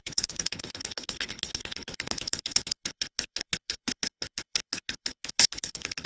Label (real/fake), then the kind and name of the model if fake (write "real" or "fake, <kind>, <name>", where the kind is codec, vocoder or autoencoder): fake, codec, HILCodec